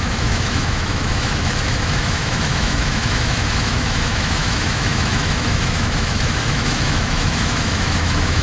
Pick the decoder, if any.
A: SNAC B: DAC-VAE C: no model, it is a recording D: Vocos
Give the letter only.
B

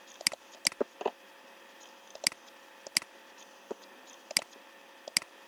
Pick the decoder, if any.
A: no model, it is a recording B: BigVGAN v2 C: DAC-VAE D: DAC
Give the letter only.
A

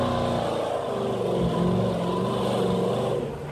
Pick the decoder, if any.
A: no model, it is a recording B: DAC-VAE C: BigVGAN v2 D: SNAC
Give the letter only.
A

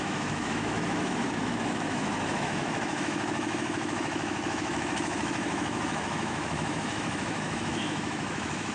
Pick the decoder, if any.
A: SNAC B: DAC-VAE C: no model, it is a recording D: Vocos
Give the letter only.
B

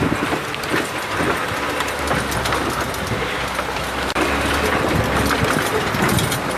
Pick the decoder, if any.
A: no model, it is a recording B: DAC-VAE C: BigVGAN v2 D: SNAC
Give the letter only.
A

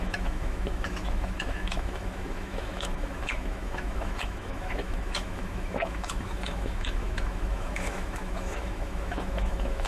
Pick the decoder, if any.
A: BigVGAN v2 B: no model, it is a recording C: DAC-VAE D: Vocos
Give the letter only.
C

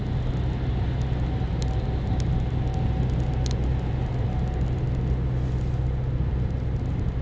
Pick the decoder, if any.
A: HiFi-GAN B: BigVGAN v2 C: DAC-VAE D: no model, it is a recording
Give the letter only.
D